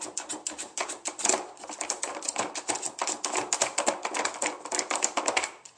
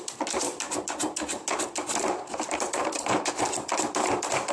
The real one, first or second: first